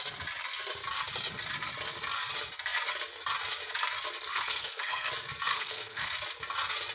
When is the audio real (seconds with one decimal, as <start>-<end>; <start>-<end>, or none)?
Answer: 0.0-4.3; 5.1-5.5; 6.1-6.9